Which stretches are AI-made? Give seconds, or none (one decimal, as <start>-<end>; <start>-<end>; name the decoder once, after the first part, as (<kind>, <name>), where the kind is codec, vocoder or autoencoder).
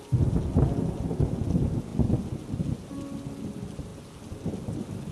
none